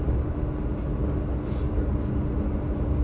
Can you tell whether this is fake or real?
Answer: real